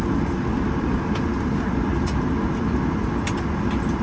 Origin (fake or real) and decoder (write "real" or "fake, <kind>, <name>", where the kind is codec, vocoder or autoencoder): real